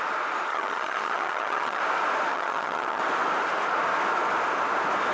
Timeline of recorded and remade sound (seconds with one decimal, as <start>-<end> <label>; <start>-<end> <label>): 0.0-0.5 recorded; 0.5-1.8 remade; 1.8-2.3 recorded; 2.3-3.0 remade; 3.0-5.1 recorded

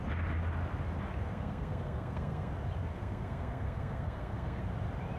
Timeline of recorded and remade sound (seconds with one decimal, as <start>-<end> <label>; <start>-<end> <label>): 0.0-1.2 recorded; 1.2-2.5 remade; 2.5-2.9 recorded; 2.9-4.6 remade; 4.6-5.2 recorded